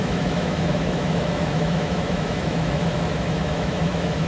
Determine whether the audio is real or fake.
fake